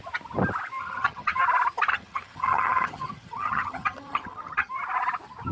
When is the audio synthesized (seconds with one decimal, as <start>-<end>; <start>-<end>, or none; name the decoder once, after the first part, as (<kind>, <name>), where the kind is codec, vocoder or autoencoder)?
0.8-1.4 (vocoder, HiFi-GAN); 1.9-4.7